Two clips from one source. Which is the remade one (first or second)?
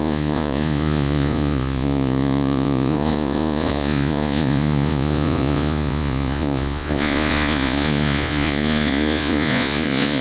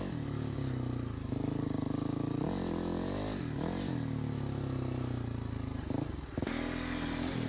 first